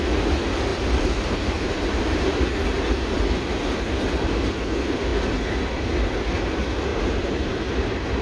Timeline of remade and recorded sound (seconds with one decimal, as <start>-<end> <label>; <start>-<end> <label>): 0.0-0.7 recorded; 0.7-3.2 remade; 3.2-6.9 recorded; 6.9-7.5 remade; 7.5-8.2 recorded

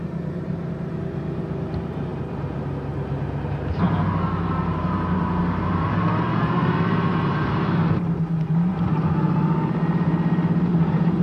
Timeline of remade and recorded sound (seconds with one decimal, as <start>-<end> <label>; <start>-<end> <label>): 0.0-8.7 remade; 8.7-10.6 recorded; 10.6-11.2 remade

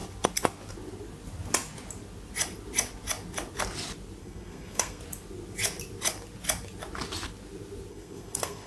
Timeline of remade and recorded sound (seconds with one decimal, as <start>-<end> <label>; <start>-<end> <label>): 0.0-4.2 recorded; 4.2-5.0 remade; 5.0-7.9 recorded; 7.9-8.7 remade

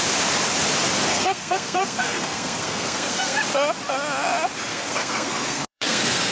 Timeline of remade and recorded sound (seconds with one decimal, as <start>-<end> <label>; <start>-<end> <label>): 0.0-1.1 recorded; 1.1-3.4 remade; 3.4-4.7 recorded; 4.7-6.3 remade

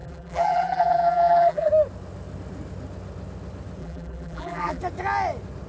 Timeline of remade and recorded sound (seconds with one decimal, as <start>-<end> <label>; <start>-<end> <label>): 0.0-1.7 remade; 1.7-3.8 recorded; 3.8-4.8 remade; 4.8-5.7 recorded

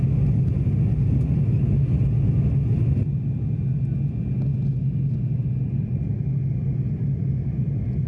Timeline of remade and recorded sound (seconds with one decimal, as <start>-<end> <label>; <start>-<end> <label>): 0.0-8.1 recorded

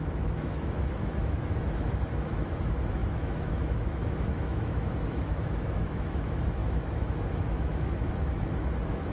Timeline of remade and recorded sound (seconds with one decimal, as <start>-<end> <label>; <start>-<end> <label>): 0.0-9.1 remade